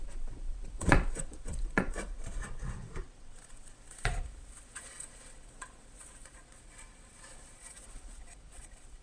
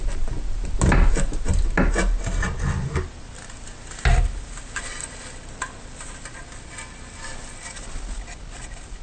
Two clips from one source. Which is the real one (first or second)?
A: second